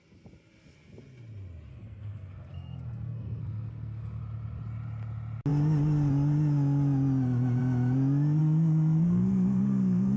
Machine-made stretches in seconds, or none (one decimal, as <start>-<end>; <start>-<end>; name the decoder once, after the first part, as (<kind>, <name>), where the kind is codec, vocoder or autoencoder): 1.7-4.2 (codec, SNAC); 8.4-10.2